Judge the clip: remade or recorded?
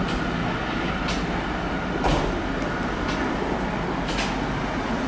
recorded